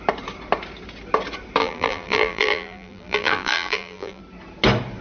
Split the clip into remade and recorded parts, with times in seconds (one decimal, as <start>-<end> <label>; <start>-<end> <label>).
0.0-1.6 recorded; 1.6-4.2 remade; 4.2-5.0 recorded